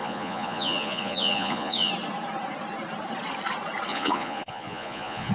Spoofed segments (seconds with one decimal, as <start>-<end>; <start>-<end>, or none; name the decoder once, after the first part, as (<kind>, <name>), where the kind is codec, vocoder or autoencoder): 0.0-1.9 (vocoder, Vocos); 3.9-5.3